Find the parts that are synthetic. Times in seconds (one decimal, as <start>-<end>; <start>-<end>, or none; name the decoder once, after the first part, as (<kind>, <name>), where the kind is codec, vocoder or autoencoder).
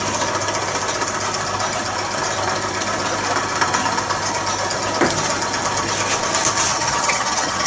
6.7-7.7 (vocoder, HiFi-GAN)